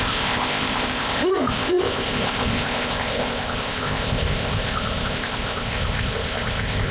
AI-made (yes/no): yes